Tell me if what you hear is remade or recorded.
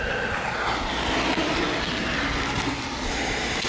recorded